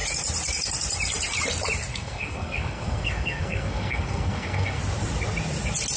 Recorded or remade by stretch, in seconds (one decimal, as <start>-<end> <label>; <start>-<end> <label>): 0.0-1.9 recorded; 1.9-4.8 remade; 4.8-6.0 recorded